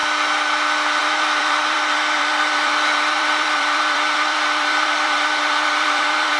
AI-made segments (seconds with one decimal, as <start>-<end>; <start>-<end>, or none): 1.0-6.4